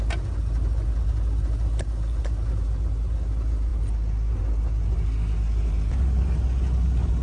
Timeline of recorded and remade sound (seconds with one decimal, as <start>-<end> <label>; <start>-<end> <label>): 0.0-7.2 recorded